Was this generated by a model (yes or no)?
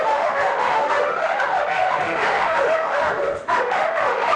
yes